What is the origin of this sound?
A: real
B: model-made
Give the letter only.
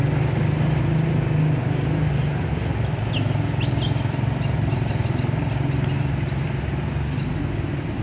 A